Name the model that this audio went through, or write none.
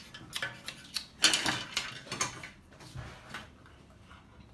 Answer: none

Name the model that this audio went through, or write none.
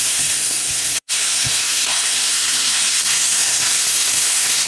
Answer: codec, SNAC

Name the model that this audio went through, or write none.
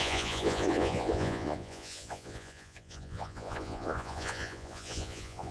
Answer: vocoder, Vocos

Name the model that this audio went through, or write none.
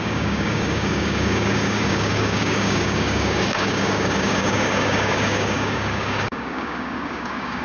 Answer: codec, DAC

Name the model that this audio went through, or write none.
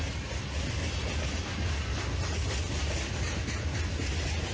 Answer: none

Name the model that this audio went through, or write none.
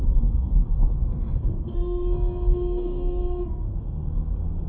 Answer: codec, SNAC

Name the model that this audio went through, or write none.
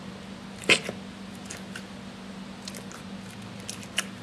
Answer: none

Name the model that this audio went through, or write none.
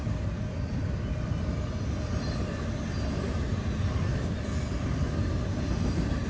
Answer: none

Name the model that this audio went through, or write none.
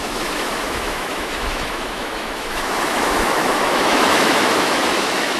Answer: autoencoder, DAC-VAE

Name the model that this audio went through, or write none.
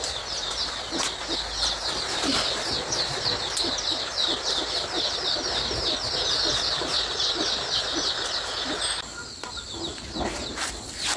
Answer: none